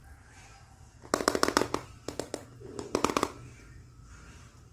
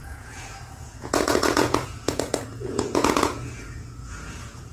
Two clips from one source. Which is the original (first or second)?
first